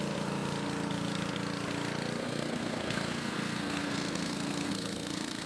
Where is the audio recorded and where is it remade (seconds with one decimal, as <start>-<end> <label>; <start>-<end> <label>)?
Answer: 0.0-2.2 recorded; 2.2-5.5 remade

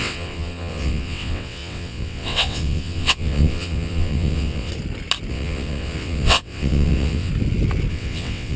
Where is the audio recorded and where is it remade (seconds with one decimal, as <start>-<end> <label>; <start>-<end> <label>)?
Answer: 0.0-4.7 remade; 4.7-5.3 recorded; 5.3-7.3 remade; 7.3-7.9 recorded; 7.9-8.6 remade

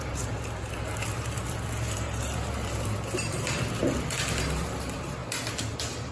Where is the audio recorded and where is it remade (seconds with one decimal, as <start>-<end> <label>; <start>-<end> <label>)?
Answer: 0.0-3.8 remade; 3.8-4.6 recorded; 4.6-5.2 remade; 5.2-6.1 recorded

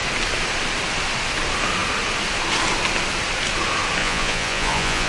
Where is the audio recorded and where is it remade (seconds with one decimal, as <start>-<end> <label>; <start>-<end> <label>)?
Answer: 0.0-4.0 recorded; 4.0-5.1 remade

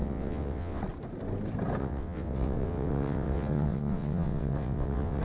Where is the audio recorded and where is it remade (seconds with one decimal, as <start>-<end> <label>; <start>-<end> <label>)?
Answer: 0.0-0.8 remade; 0.8-1.8 recorded; 1.8-5.2 remade

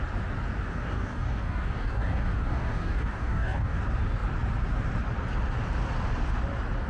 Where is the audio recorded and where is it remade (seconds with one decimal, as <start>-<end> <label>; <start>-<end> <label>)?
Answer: 0.0-0.7 recorded; 0.7-3.8 remade; 3.8-6.9 recorded

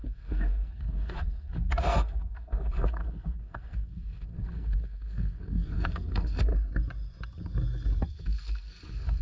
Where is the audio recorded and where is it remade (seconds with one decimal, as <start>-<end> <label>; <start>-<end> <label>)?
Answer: 0.0-6.5 remade; 6.5-8.0 recorded; 8.0-9.2 remade